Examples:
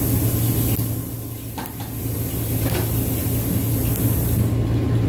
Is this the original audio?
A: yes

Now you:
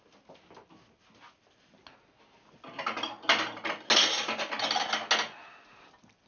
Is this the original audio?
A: yes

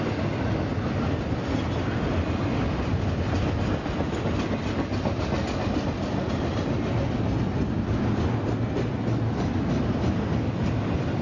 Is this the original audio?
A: yes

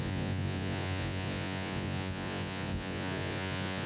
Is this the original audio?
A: no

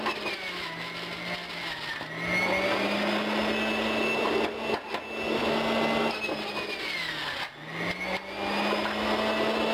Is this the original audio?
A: yes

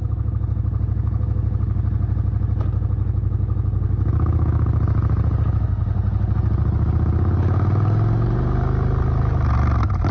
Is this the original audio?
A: yes